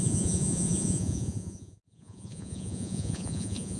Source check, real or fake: fake